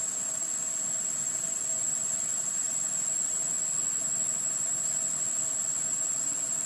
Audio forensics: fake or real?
real